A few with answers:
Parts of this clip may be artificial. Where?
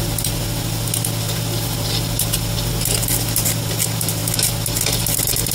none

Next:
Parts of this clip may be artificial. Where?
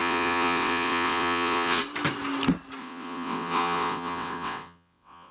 0.0-1.8 (vocoder, WaveNeXt); 2.8-5.3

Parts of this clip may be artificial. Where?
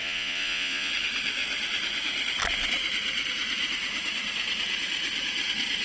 0.0-0.9 (vocoder, Vocos)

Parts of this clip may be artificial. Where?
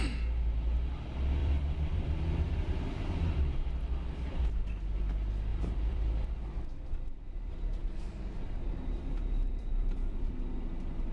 1.4-4.4 (vocoder, BigVGAN v2); 5.5-6.3; 9.4-10.3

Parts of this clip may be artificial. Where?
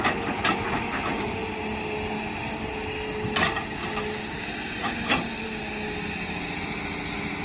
none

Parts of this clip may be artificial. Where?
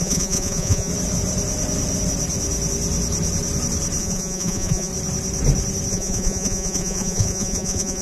0.0-0.9 (vocoder, Vocos); 4.0-4.9; 5.9-8.0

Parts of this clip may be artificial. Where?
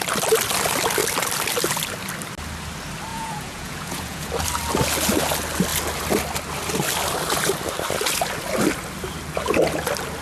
3.1-4.3 (vocoder, Vocos)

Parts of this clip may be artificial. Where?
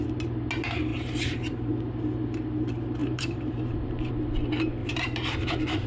0.9-1.7 (vocoder, BigVGAN v2); 3.0-4.1; 4.8-5.9